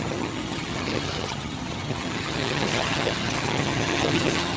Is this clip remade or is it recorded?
remade